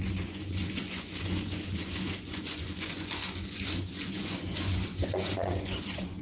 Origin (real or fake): fake